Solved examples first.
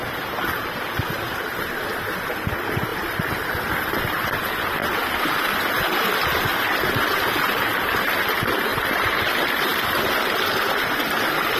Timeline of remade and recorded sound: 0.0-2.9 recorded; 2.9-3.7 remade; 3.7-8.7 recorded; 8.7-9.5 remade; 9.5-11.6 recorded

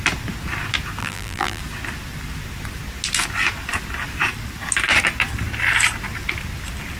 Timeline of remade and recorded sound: 0.0-1.0 recorded; 1.0-1.6 remade; 1.6-7.0 recorded

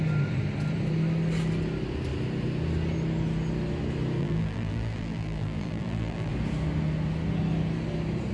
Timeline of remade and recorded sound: 0.0-4.2 recorded; 4.2-6.3 remade; 6.3-8.3 recorded

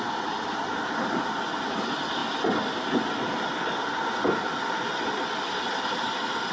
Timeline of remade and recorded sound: 0.0-6.5 recorded

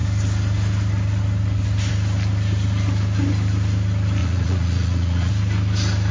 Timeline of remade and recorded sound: 0.0-4.2 recorded; 4.2-5.3 remade; 5.3-6.1 recorded

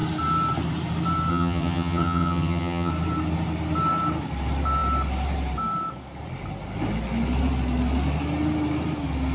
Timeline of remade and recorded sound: 0.0-1.3 recorded; 1.3-2.9 remade; 2.9-9.3 recorded